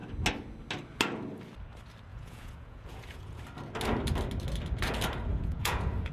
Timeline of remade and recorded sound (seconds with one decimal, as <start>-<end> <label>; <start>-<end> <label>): 0.0-2.1 recorded; 2.1-3.4 remade; 3.4-5.3 recorded; 5.3-6.1 remade